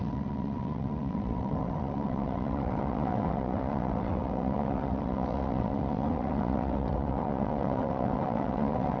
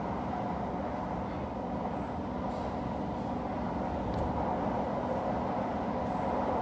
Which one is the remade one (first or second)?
first